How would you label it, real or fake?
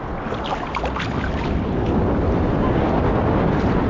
real